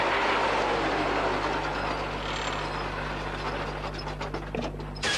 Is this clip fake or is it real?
real